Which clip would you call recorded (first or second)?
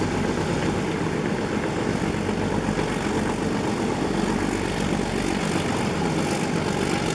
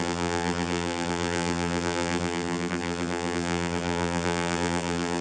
first